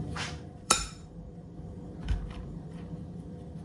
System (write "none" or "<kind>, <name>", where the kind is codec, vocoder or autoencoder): vocoder, BigVGAN v2